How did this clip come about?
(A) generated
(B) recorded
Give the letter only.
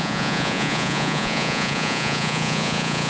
A